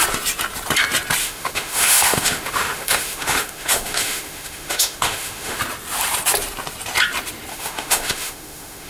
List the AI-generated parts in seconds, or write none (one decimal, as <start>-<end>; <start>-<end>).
1.2-5.6; 7.5-8.9